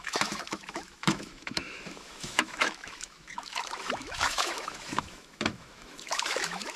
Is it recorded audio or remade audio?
remade